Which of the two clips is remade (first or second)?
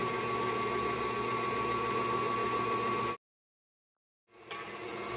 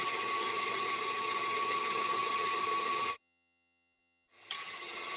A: second